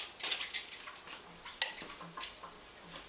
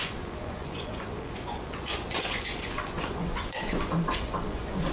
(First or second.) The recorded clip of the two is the first